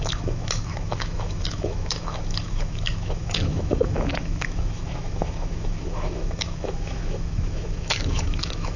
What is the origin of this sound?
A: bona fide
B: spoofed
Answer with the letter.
B